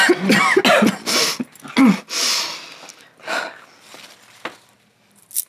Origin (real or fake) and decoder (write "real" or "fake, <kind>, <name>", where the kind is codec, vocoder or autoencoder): real